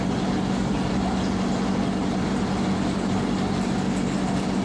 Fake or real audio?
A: real